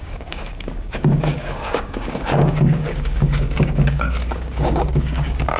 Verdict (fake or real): fake